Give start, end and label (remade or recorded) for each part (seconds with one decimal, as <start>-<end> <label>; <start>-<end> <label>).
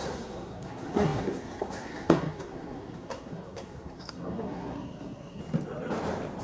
0.0-5.4 remade; 5.4-6.4 recorded